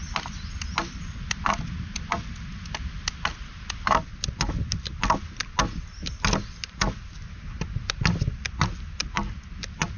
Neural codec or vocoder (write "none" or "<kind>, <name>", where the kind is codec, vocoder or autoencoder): none